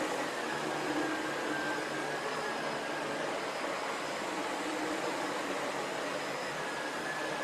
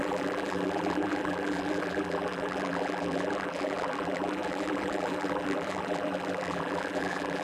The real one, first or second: first